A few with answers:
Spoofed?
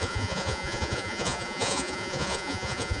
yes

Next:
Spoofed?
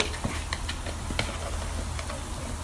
no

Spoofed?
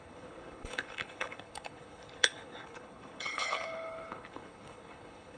yes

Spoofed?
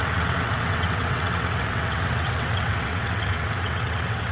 yes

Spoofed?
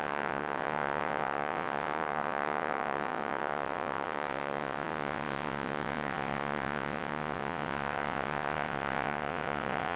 yes